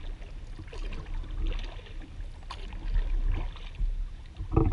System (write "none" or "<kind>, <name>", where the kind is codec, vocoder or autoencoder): none